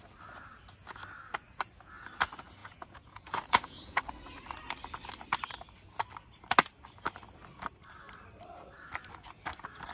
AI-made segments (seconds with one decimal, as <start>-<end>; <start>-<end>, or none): 2.6-4.0